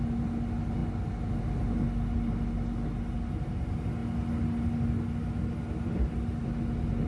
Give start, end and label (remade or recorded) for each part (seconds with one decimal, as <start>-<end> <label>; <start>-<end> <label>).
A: 0.0-7.1 recorded